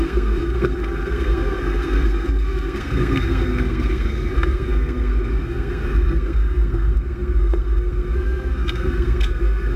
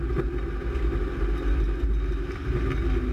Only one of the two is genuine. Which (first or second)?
second